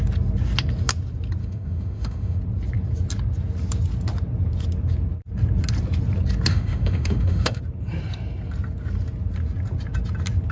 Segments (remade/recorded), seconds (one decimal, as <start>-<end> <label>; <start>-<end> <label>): 0.0-1.4 recorded; 1.4-2.4 remade; 2.4-6.5 recorded; 6.5-7.6 remade; 7.6-10.5 recorded